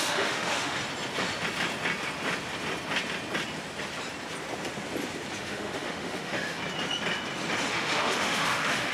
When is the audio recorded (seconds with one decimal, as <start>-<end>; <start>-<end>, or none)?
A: 0.8-5.4; 6.6-7.7